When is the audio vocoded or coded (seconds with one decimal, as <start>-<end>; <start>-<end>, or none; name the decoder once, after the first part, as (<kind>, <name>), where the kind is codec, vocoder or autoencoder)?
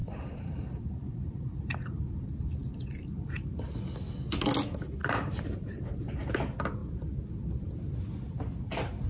0.0-3.0 (vocoder, BigVGAN v2); 5.0-6.3